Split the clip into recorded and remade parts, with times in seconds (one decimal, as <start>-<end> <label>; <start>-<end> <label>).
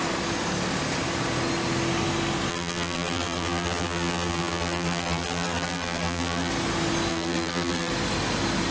0.0-2.5 recorded; 2.5-6.5 remade; 6.5-7.1 recorded; 7.1-7.9 remade; 7.9-8.7 recorded